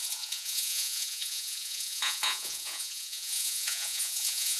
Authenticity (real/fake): fake